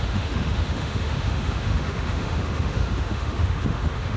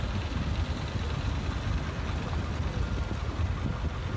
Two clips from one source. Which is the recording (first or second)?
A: second